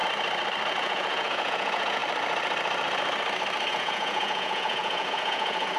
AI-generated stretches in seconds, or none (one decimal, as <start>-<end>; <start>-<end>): 0.7-2.0; 3.7-5.8